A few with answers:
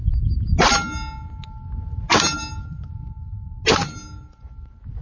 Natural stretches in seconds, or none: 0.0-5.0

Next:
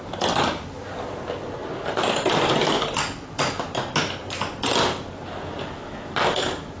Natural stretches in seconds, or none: 0.0-6.8